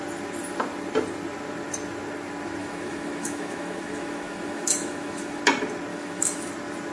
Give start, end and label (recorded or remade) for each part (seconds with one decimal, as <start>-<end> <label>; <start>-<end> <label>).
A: 0.0-2.6 recorded; 2.6-5.4 remade; 5.4-5.9 recorded; 5.9-6.5 remade; 6.5-6.9 recorded